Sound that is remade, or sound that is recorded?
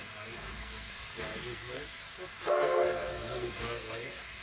remade